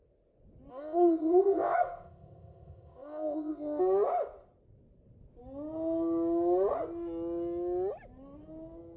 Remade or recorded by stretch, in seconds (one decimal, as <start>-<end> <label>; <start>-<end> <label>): 0.0-0.7 recorded; 0.7-3.8 remade; 3.8-9.0 recorded